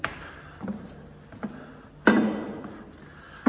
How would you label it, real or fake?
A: real